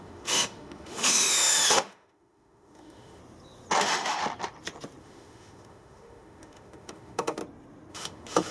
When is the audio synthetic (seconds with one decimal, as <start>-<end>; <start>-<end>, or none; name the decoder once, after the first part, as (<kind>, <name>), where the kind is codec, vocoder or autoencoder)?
0.0-3.2 (autoencoder, DAC-VAE); 3.8-4.2; 5.0-7.4; 7.9-8.5